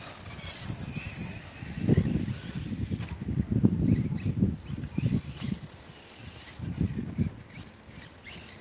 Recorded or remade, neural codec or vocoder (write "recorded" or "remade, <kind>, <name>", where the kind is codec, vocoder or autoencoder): recorded